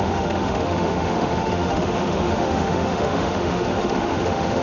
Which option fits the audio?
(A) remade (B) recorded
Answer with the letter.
A